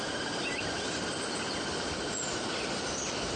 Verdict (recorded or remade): recorded